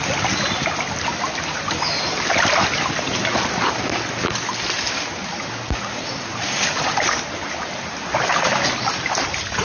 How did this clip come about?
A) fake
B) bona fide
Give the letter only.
B